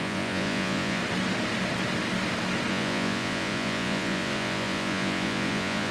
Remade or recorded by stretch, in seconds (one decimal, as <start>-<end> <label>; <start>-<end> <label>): 0.0-1.0 remade; 1.0-2.7 recorded; 2.7-5.9 remade